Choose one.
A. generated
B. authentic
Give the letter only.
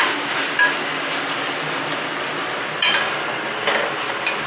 B